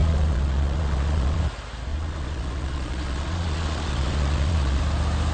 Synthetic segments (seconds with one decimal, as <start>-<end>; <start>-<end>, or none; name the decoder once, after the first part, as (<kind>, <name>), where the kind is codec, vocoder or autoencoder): 0.0-1.4 (vocoder, Vocos); 1.9-4.8